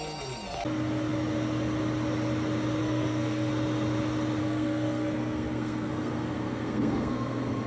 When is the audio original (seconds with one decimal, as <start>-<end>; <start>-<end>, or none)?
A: 0.0-2.8; 3.5-4.4